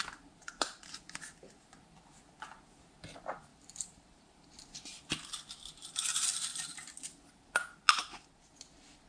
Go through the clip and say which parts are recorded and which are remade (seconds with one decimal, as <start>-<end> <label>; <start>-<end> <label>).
0.0-0.4 recorded; 0.4-1.8 remade; 1.8-3.5 recorded; 3.5-4.9 remade; 4.9-8.0 recorded; 8.0-8.5 remade; 8.5-9.1 recorded